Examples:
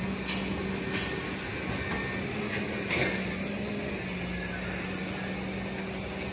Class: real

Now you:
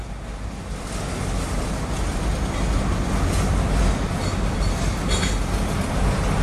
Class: real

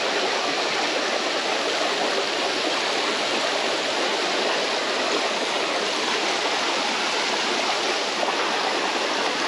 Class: real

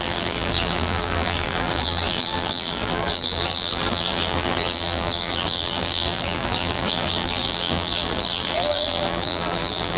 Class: fake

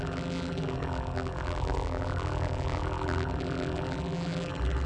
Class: fake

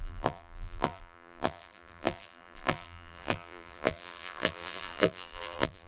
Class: fake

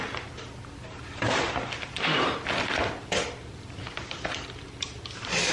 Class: fake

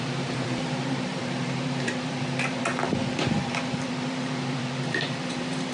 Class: fake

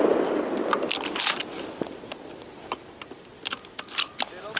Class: real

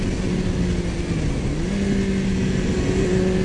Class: real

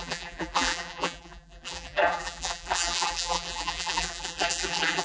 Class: fake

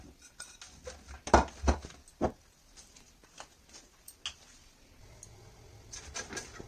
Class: real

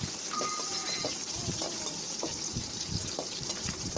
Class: fake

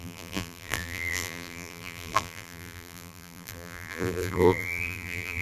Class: fake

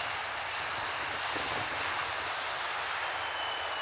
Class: real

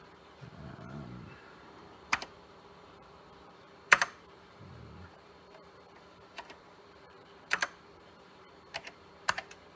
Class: fake